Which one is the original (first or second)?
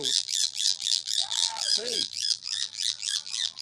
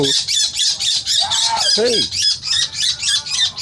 second